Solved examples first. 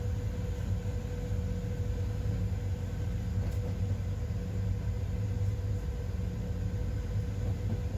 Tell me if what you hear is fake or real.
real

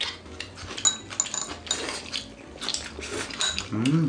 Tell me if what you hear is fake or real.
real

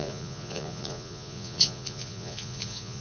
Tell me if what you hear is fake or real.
fake